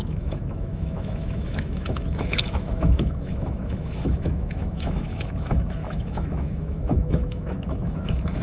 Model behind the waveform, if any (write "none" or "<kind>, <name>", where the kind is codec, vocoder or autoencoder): autoencoder, DAC-VAE